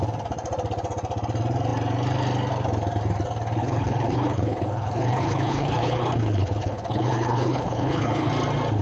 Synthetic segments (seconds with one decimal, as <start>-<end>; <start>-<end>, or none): 3.6-8.3